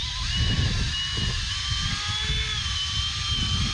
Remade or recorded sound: recorded